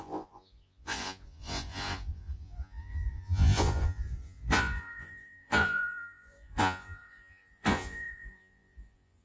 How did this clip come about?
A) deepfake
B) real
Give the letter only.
A